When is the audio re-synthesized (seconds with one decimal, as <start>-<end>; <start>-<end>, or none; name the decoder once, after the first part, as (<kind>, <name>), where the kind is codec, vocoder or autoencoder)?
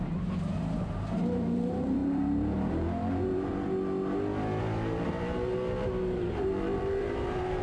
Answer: 0.0-3.5 (vocoder, BigVGAN v2); 4.6-7.6